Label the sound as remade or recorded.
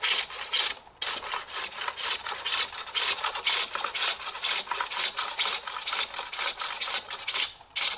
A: recorded